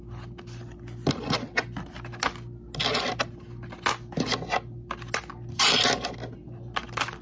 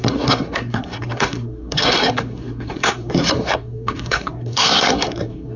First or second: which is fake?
second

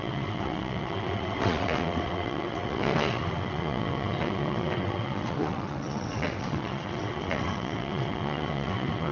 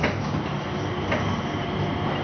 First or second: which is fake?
first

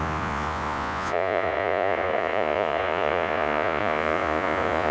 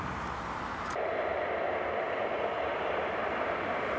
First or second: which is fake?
first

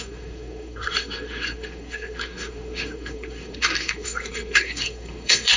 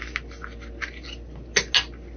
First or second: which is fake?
first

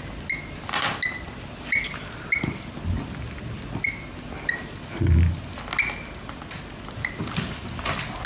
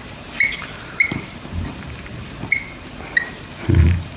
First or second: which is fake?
second